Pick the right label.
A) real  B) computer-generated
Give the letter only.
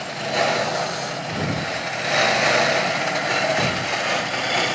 B